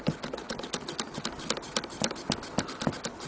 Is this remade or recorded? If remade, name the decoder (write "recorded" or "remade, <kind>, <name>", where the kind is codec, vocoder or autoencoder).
recorded